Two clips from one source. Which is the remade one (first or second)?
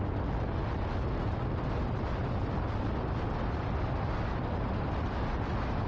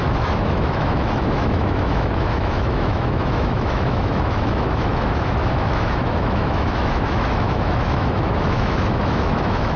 second